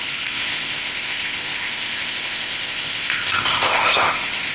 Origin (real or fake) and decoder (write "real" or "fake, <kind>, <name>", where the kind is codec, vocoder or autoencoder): fake, codec, ZipCodec